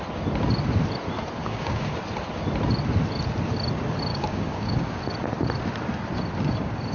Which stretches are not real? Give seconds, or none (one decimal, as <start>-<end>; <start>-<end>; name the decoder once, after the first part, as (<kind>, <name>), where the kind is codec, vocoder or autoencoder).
1.4-1.9 (codec, DAC); 4.1-5.0